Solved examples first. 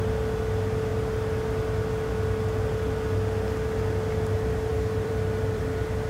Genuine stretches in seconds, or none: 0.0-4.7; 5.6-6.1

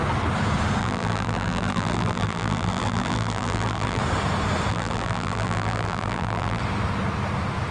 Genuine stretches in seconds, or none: 0.0-0.8; 4.0-4.7; 6.6-7.7

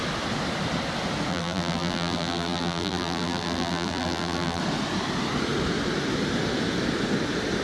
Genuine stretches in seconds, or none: 0.0-1.3; 4.6-7.6

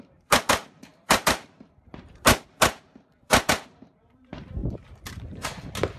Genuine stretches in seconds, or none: 4.6-6.0

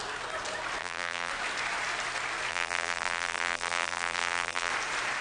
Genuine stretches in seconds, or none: 0.0-0.8; 1.3-2.5; 4.7-5.2

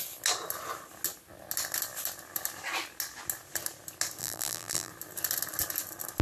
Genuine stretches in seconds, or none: 0.0-4.2; 4.9-6.2

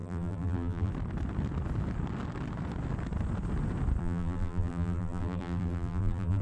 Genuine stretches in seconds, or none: 0.9-4.0